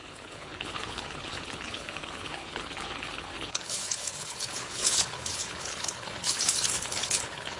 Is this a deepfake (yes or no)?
yes